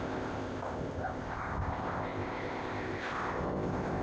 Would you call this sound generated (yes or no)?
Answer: yes